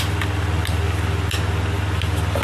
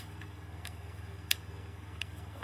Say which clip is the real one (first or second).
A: first